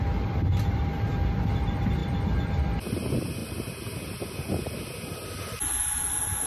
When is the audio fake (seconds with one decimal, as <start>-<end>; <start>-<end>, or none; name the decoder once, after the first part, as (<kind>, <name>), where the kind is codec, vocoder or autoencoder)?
none